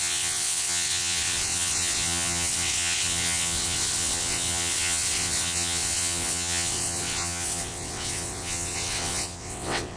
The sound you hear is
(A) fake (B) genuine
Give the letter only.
A